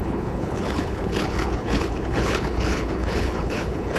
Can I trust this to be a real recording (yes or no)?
no